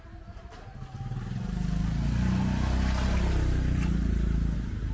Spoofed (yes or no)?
no